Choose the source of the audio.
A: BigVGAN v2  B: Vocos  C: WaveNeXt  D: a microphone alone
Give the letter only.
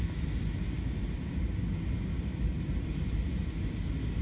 D